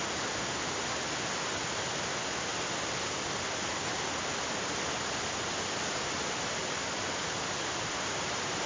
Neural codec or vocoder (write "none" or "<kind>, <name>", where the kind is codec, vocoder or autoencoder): none